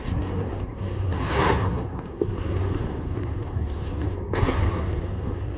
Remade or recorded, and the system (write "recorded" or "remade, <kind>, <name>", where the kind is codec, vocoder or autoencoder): remade, codec, SNAC